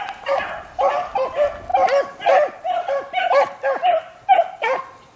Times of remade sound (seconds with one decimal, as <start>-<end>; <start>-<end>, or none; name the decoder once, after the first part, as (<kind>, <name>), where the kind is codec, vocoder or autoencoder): none